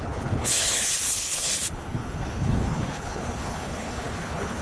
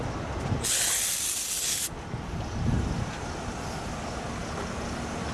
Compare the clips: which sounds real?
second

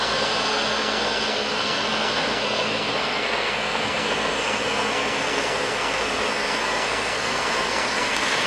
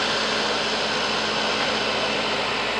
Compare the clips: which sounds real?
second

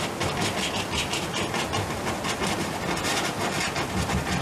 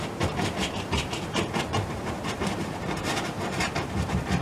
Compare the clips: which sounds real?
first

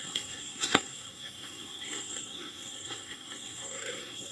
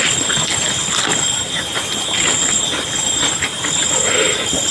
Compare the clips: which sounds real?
second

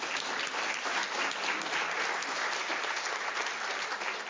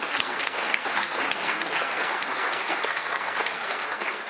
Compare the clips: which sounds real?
first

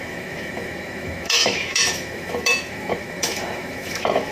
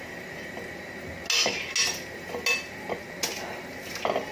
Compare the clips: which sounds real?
second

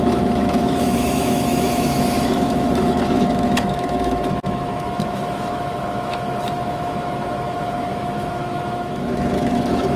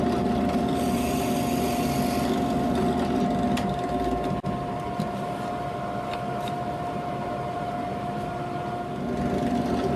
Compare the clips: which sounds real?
second